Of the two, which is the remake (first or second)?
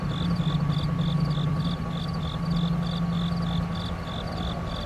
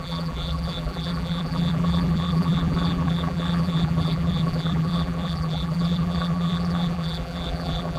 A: second